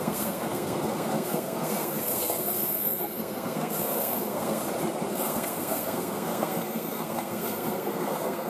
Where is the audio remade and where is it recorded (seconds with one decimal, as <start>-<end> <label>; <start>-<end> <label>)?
0.0-4.6 remade; 4.6-5.1 recorded; 5.1-8.5 remade